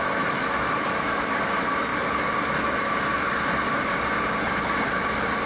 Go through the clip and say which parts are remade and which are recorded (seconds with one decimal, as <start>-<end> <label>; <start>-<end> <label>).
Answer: 0.0-1.9 remade; 1.9-5.5 recorded